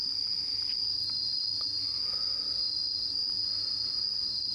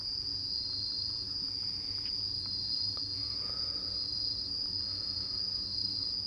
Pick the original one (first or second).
first